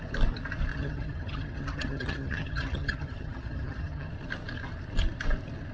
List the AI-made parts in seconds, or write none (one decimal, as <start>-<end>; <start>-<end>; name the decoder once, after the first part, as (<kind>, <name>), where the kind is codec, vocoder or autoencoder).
0.7-4.1 (vocoder, HiFi-GAN)